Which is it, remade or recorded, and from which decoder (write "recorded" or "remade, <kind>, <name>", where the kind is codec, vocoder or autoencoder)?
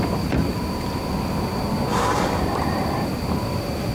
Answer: remade, vocoder, BigVGAN v2